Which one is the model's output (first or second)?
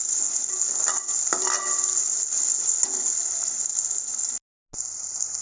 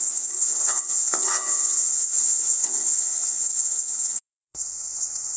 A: second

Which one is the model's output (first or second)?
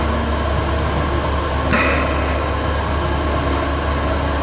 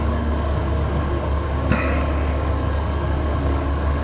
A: second